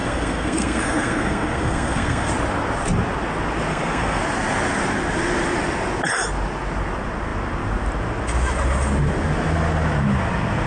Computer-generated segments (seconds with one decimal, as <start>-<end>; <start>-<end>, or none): 0.0-2.3; 3.7-4.2